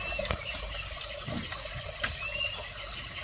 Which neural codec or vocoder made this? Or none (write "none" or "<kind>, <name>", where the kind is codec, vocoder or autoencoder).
none